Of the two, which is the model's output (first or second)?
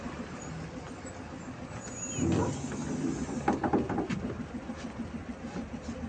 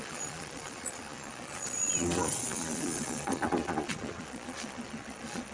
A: second